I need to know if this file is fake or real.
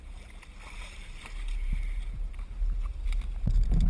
real